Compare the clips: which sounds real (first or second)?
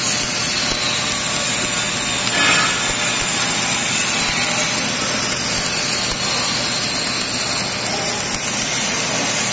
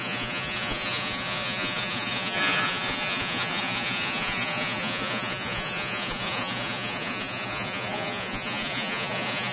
first